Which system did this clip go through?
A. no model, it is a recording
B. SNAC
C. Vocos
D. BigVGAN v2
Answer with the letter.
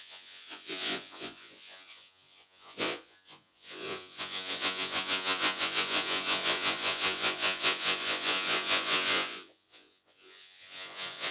C